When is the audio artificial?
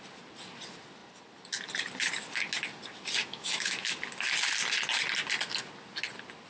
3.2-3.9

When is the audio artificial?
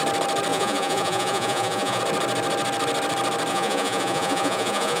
0.5-2.0; 3.5-5.0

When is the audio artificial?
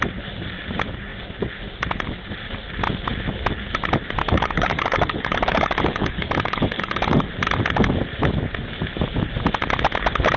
4.2-7.3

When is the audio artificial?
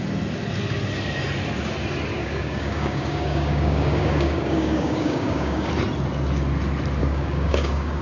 2.1-5.7; 7.0-8.0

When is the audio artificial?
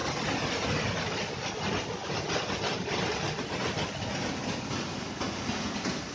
none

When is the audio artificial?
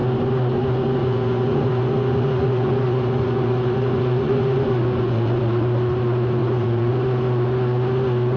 1.0-5.4; 6.4-6.9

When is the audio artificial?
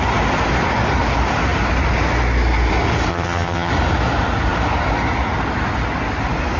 3.1-3.7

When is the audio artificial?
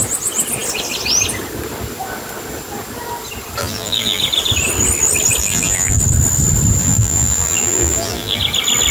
3.6-4.2; 5.4-6.0; 6.8-8.4